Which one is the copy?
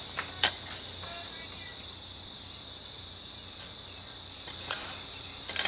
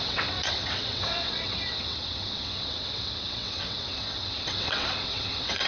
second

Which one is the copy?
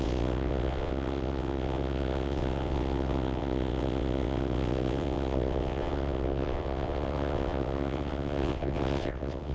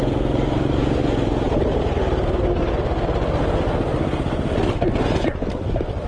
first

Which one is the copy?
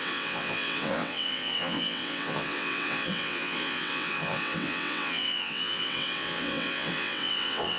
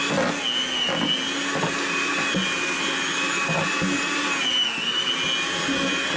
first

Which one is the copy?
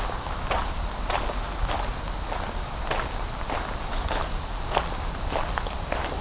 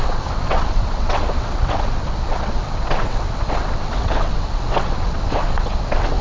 second